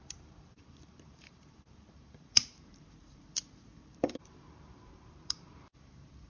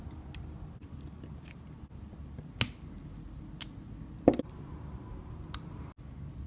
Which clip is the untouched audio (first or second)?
second